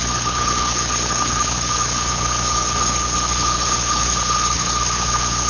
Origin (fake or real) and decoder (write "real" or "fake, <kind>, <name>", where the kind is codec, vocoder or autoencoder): fake, codec, HILCodec